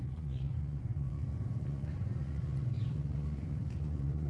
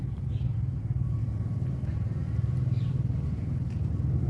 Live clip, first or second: second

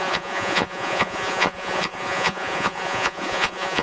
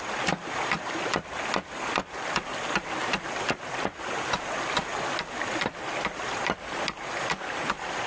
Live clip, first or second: second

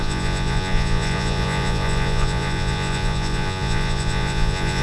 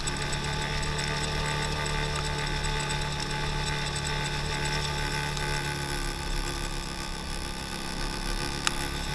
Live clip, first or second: second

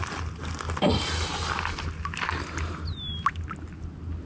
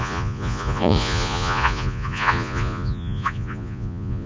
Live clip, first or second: first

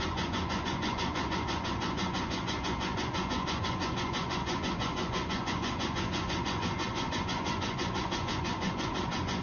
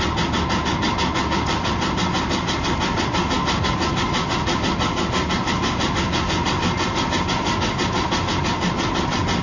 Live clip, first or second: second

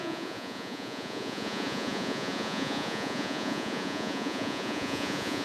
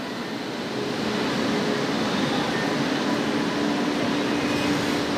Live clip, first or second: second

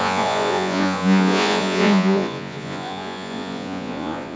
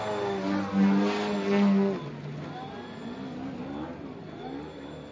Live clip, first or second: second